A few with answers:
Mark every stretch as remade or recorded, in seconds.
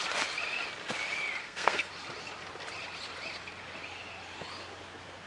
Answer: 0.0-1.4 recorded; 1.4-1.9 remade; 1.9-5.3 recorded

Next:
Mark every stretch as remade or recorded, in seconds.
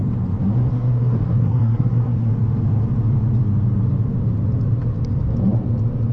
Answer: 0.0-0.7 recorded; 0.7-2.3 remade; 2.3-6.1 recorded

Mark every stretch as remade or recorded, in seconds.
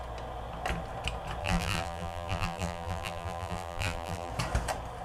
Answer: 0.0-1.4 recorded; 1.4-4.3 remade; 4.3-5.0 recorded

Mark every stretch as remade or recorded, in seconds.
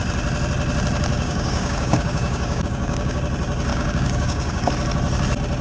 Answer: 0.0-1.1 recorded; 1.1-3.2 remade; 3.2-3.7 recorded; 3.7-4.7 remade; 4.7-5.6 recorded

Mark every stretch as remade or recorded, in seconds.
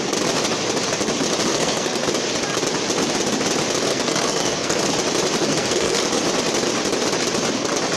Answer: 0.0-1.5 recorded; 1.5-2.1 remade; 2.1-3.9 recorded; 3.9-4.8 remade; 4.8-5.4 recorded; 5.4-6.0 remade; 6.0-8.0 recorded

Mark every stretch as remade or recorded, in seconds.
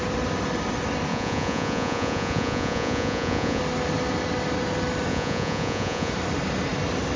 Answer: 0.0-1.1 recorded; 1.1-3.6 remade; 3.6-5.1 recorded; 5.1-6.1 remade; 6.1-7.2 recorded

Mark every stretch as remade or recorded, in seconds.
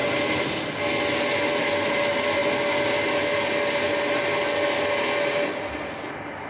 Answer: 0.0-6.5 recorded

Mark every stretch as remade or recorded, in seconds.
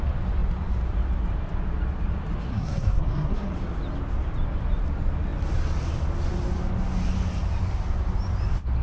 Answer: 0.0-2.5 recorded; 2.5-3.5 remade; 3.5-8.8 recorded